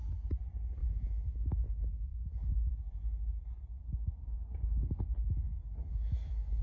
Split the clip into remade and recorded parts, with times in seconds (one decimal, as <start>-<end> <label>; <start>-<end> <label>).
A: 0.0-0.8 recorded; 0.8-2.7 remade; 2.7-5.5 recorded; 5.5-6.6 remade